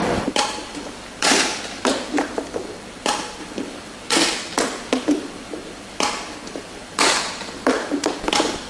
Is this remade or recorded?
remade